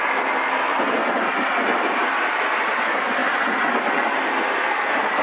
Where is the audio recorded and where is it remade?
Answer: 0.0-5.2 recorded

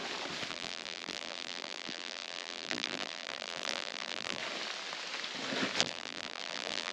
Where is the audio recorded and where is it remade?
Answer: 0.0-0.5 recorded; 0.5-4.4 remade; 4.4-5.8 recorded; 5.8-6.9 remade

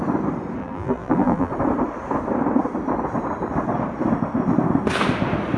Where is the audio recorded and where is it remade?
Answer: 0.0-0.6 recorded; 0.6-1.5 remade; 1.5-5.6 recorded

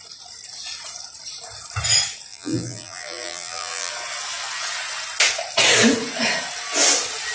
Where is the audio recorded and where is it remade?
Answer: 0.0-2.3 recorded; 2.3-3.9 remade; 3.9-7.3 recorded

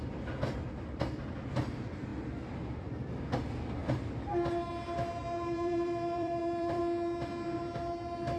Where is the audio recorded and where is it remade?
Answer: 0.0-5.2 recorded; 5.2-6.8 remade; 6.8-8.4 recorded

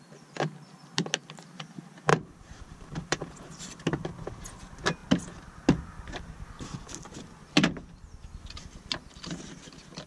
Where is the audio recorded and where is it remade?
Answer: 0.0-2.1 recorded; 2.1-3.2 remade; 3.2-10.1 recorded

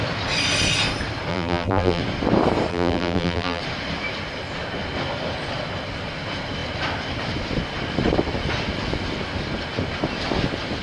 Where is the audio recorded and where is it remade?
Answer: 0.0-1.3 recorded; 1.3-2.0 remade; 2.0-2.7 recorded; 2.7-3.6 remade; 3.6-10.8 recorded

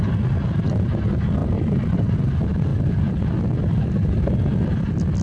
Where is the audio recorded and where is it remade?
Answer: 0.0-1.4 recorded; 1.4-2.2 remade; 2.2-5.2 recorded